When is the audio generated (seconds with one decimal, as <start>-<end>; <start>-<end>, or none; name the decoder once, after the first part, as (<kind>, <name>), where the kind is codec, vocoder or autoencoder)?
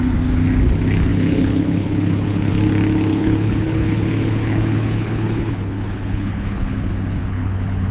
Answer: 1.1-2.5 (codec, HILCodec); 3.1-7.9